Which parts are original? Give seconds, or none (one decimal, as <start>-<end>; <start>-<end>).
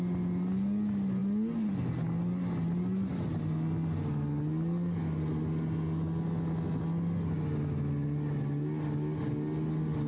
0.0-10.1